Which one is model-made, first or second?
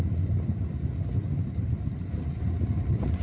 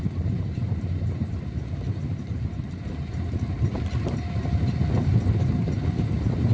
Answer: second